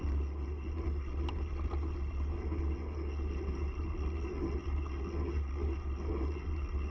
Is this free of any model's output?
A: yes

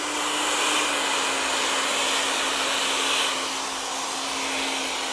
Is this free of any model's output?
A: yes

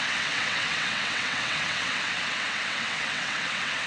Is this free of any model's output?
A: no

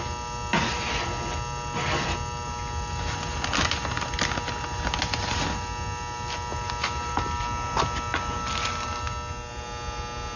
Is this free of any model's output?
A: yes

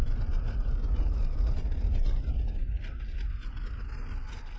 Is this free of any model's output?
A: yes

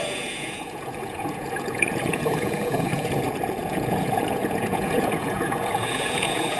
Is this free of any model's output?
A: no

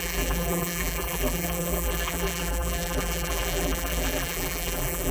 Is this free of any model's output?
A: no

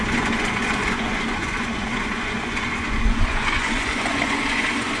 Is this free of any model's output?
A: no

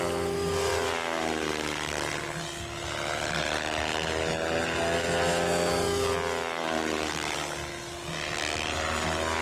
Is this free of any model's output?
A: yes